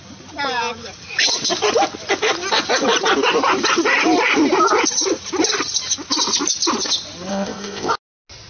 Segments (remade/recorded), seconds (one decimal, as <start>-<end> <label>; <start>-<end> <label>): 0.0-7.3 recorded; 7.3-7.9 remade; 7.9-8.5 recorded